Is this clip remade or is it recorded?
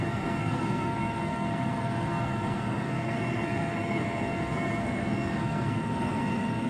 remade